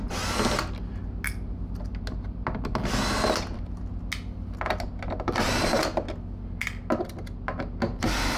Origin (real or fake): real